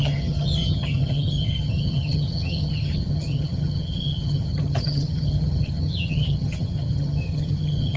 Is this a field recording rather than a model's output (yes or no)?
no